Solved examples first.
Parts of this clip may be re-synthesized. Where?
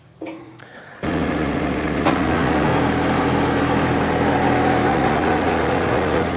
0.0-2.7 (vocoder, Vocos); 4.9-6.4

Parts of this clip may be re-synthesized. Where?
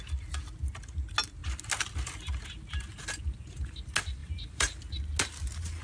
4.2-4.8 (vocoder, BigVGAN v2)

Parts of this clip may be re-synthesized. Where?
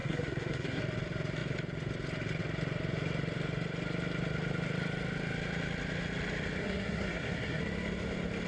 0.0-0.8 (codec, SNAC); 6.6-7.6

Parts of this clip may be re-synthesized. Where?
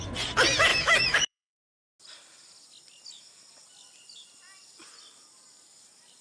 0.7-1.7 (autoencoder, DAC-VAE)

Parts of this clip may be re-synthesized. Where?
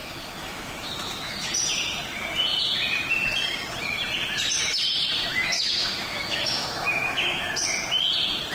0.0-1.5 (autoencoder, DAC-VAE); 5.3-7.5